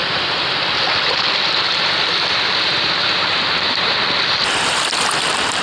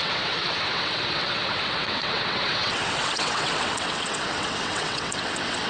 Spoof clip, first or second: second